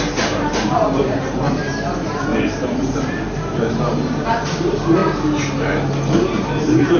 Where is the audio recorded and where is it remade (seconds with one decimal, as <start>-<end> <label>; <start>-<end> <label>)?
0.0-5.0 remade; 5.0-6.5 recorded; 6.5-7.0 remade